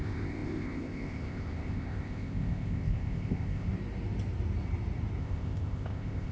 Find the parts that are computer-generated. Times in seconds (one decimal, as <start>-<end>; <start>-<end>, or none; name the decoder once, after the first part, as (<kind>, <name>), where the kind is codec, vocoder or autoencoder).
0.0-3.7 (codec, ZipCodec); 5.2-6.3

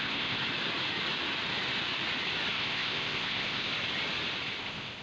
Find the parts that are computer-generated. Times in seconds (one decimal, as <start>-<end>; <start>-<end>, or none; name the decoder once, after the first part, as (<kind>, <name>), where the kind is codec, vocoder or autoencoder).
0.0-0.4 (codec, ZipCodec); 2.5-3.7; 4.6-5.0

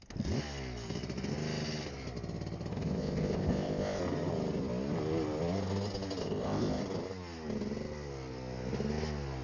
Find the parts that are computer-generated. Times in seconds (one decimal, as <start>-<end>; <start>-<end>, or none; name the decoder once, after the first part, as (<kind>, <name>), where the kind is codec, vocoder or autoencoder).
2.7-4.0 (codec, ZipCodec); 6.2-6.8

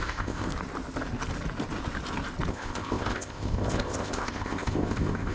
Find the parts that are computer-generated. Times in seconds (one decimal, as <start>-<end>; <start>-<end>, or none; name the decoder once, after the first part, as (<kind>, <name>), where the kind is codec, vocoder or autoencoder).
0.0-0.5 (codec, ZipCodec); 2.5-5.3

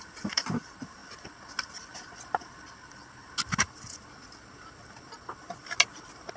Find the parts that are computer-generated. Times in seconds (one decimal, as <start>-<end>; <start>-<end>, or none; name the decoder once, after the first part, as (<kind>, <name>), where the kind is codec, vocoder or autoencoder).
none